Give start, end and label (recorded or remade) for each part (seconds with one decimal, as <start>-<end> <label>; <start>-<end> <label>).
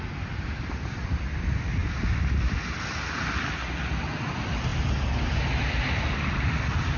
0.0-7.0 recorded